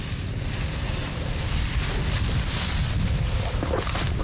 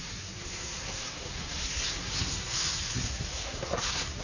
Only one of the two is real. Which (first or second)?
first